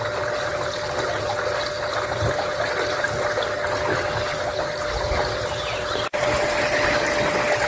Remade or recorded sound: recorded